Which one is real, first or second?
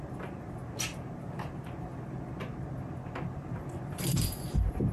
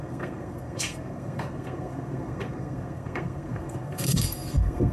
first